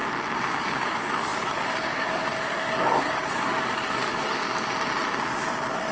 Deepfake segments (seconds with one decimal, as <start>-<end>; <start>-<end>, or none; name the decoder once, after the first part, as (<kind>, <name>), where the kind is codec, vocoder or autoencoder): 0.6-4.4 (codec, DAC)